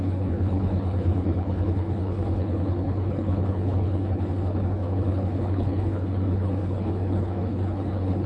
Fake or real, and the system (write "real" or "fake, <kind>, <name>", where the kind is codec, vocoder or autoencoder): fake, codec, HILCodec